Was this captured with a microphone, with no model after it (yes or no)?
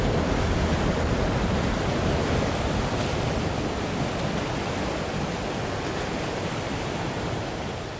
yes